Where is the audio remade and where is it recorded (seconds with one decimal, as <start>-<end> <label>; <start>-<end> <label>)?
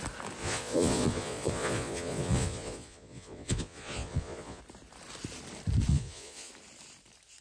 0.0-0.4 recorded; 0.4-4.6 remade; 4.6-5.9 recorded; 5.9-6.5 remade; 6.5-7.4 recorded